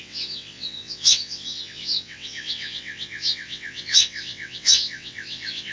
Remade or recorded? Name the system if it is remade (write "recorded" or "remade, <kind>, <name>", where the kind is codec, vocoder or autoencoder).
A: remade, vocoder, WaveNeXt